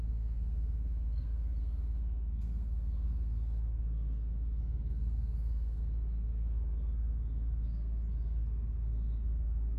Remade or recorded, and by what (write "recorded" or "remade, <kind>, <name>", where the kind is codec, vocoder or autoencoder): remade, codec, SNAC